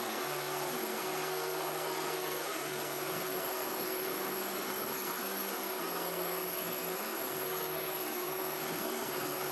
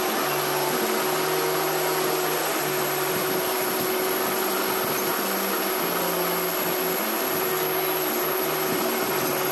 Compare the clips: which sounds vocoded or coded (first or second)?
first